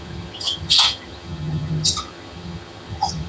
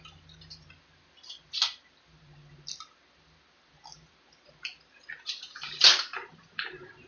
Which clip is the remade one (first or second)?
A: first